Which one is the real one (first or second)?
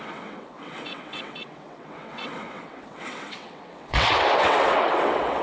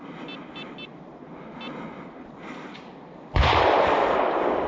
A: second